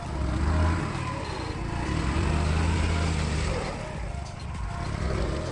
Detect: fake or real real